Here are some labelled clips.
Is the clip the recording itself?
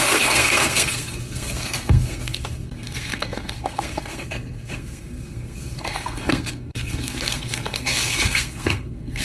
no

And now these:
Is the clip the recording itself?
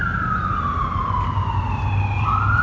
yes